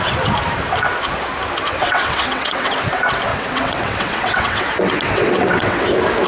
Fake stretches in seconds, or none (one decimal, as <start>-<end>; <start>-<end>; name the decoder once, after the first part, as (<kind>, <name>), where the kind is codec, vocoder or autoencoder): 1.8-2.7 (vocoder, WaveNeXt); 3.3-5.8